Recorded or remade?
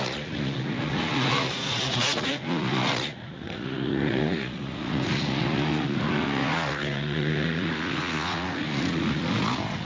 remade